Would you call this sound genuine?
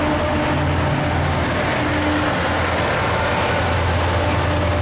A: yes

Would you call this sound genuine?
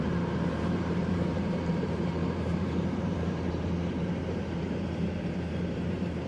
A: no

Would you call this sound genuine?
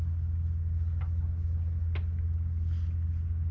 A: yes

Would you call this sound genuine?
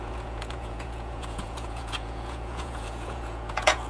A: no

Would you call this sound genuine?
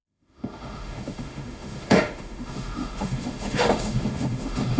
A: no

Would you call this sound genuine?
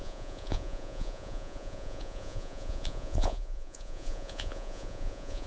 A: no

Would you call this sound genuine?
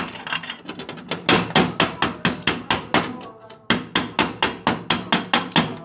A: yes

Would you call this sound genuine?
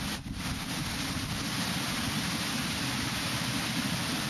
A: yes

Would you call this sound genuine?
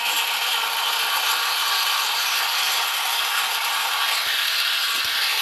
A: no